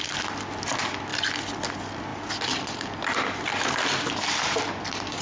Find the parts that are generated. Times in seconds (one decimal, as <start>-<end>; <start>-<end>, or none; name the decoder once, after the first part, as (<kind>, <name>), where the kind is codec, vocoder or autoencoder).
none